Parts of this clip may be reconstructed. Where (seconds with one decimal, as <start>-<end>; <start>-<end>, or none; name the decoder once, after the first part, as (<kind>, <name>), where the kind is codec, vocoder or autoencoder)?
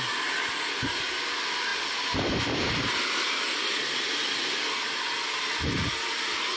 1.7-3.8 (vocoder, BigVGAN v2)